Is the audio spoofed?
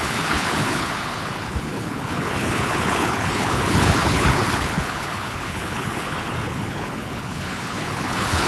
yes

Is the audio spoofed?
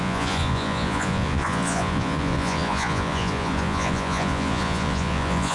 yes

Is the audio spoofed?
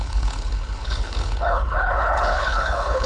yes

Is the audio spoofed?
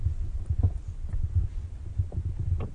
no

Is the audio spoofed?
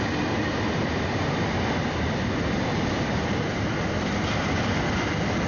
no